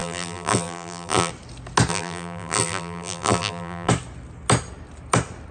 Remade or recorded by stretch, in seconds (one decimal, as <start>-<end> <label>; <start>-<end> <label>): 0.0-1.3 remade; 1.3-1.9 recorded; 1.9-3.9 remade; 3.9-5.5 recorded